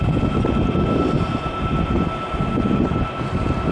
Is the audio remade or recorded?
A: recorded